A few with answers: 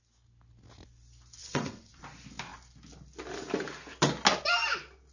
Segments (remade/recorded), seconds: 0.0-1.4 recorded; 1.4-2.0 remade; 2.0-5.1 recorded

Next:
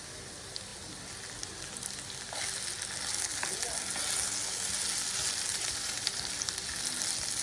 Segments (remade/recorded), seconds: 0.0-5.5 recorded; 5.5-6.3 remade; 6.3-7.4 recorded